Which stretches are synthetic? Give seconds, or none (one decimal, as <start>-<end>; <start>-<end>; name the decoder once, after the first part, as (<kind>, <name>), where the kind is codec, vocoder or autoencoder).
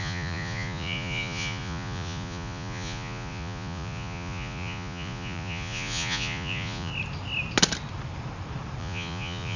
0.0-6.9 (vocoder, Vocos); 8.8-9.6